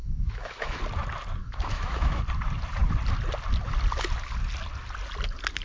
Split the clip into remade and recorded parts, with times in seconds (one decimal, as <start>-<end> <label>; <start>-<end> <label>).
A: 0.0-0.8 remade; 0.8-1.4 recorded; 1.4-2.2 remade; 2.2-5.6 recorded